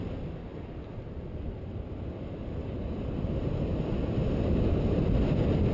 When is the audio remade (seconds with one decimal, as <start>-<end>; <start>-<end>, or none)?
none